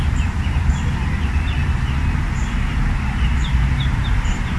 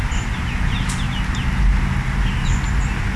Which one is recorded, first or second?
second